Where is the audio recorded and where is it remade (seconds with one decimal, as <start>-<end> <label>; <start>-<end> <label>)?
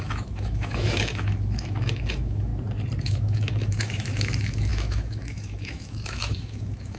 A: 0.0-2.5 remade; 2.5-3.0 recorded; 3.0-7.0 remade